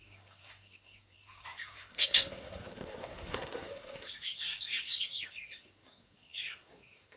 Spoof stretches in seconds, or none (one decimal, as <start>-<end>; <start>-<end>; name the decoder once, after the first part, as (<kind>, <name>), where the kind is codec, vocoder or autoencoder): 0.0-7.2 (codec, SNAC)